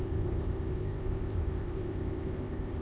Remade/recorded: remade